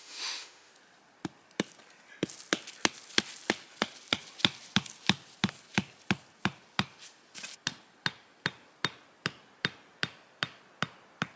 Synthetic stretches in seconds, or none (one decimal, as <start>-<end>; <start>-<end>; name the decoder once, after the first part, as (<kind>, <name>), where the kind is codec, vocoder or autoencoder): 0.0-0.7 (autoencoder, DAC-VAE)